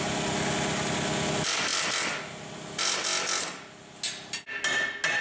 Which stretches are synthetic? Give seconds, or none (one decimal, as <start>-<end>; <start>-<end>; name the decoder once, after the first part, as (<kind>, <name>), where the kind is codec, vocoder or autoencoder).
none